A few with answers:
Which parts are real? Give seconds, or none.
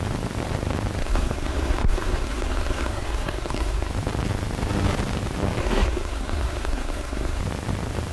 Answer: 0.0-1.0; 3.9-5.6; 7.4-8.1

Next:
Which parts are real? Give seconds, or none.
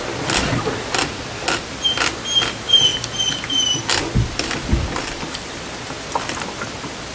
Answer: 0.0-7.1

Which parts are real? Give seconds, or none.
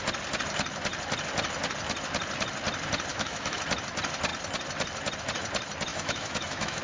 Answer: 0.0-3.1; 3.6-5.9